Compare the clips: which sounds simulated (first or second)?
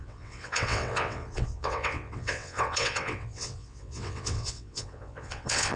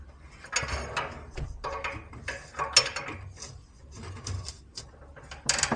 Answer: first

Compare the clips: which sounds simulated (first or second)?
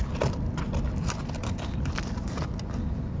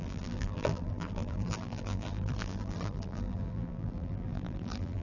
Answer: second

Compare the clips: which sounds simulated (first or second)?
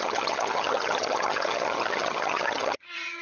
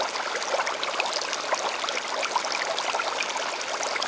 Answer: first